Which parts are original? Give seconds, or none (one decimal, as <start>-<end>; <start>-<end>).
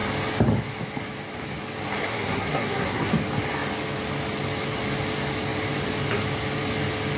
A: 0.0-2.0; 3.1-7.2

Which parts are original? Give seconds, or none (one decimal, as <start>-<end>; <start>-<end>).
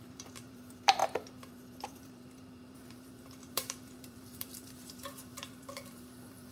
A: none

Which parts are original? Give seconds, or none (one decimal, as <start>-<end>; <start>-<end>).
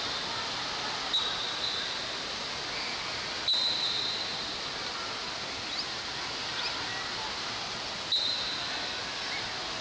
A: 0.0-9.8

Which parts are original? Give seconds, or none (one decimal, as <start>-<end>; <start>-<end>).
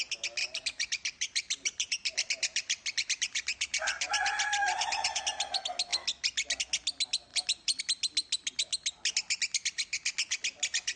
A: 0.0-0.4; 4.1-4.6; 5.2-7.3; 7.8-11.0